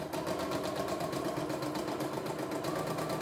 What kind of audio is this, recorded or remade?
recorded